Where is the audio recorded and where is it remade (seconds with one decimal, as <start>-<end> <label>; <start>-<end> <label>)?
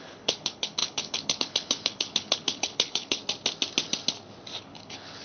0.0-3.2 remade; 3.2-4.6 recorded; 4.6-5.2 remade